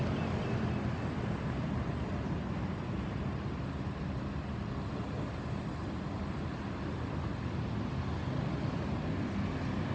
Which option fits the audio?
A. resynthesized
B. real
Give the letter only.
B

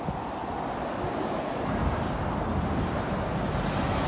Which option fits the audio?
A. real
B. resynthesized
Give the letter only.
A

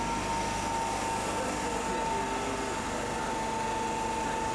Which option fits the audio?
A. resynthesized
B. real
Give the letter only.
B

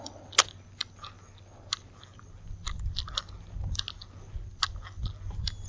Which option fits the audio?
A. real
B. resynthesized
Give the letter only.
A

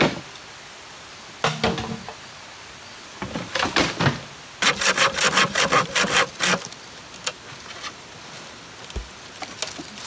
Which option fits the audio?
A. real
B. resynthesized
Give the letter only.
A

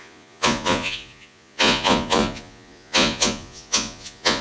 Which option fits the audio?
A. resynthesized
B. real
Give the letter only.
A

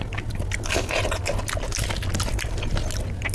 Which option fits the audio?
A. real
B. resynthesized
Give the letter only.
A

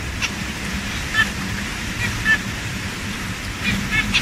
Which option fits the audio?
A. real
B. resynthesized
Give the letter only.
B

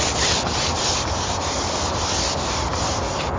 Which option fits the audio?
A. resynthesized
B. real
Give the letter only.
B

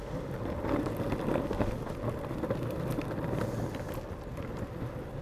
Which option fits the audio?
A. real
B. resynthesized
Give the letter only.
A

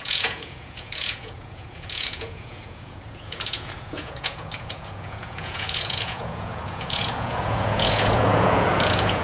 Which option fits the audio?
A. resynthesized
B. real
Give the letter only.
A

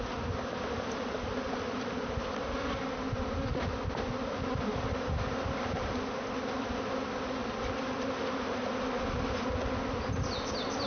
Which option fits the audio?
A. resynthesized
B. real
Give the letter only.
B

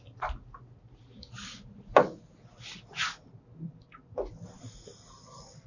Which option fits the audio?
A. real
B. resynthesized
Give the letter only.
A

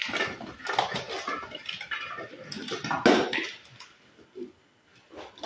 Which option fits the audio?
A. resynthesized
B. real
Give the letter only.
B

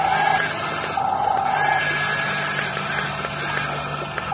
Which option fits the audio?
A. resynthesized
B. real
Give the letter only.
B